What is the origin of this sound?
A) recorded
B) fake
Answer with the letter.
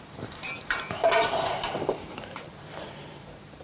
B